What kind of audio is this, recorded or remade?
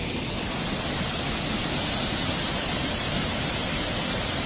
recorded